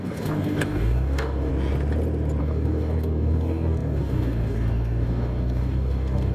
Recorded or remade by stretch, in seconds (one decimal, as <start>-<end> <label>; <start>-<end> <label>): 0.0-1.5 remade; 1.5-2.4 recorded; 2.4-6.3 remade